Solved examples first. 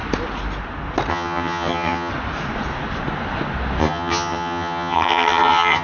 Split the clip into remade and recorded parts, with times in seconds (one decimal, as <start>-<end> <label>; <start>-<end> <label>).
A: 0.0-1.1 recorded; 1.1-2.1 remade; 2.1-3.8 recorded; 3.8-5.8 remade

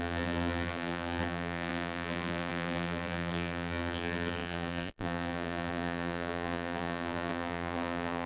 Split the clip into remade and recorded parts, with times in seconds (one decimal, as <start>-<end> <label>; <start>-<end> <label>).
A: 0.0-8.3 remade

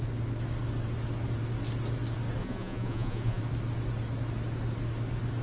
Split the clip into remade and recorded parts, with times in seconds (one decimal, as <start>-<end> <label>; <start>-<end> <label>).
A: 0.0-2.4 recorded; 2.4-3.4 remade; 3.4-5.4 recorded